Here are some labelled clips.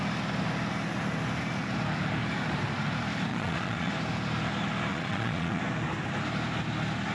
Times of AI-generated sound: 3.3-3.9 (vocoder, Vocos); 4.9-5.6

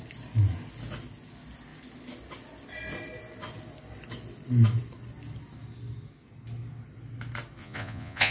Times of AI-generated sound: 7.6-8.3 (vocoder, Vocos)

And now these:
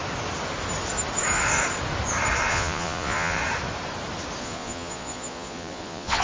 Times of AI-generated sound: 2.5-3.4 (vocoder, Vocos); 4.4-6.2

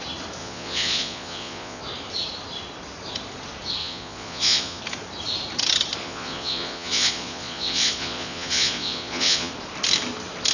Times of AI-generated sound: 0.4-1.8 (vocoder, Vocos); 3.8-4.8; 6.0-9.5